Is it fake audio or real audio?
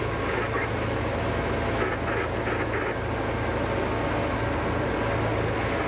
real